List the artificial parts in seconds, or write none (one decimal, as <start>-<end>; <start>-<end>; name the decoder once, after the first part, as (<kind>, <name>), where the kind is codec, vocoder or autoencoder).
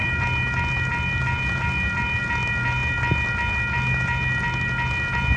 none